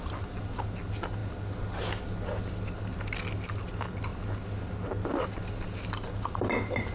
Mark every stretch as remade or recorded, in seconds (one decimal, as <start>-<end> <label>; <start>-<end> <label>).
0.0-6.9 recorded